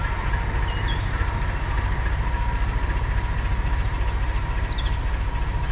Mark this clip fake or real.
real